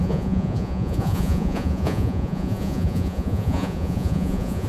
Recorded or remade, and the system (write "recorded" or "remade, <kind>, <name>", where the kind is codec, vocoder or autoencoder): remade, vocoder, Vocos